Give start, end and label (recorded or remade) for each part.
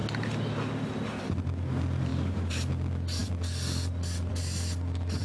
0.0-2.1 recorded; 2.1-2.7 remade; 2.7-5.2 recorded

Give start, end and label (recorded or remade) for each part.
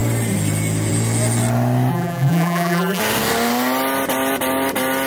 0.0-1.9 recorded; 1.9-3.0 remade; 3.0-5.1 recorded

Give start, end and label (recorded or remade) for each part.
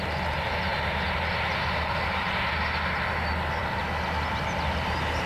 0.0-0.7 recorded; 0.7-2.5 remade; 2.5-5.3 recorded